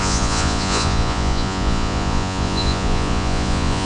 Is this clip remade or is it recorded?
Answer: remade